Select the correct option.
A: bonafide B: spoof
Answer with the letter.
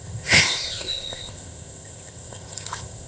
B